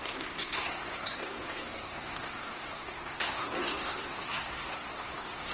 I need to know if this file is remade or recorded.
remade